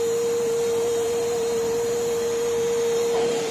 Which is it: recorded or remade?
remade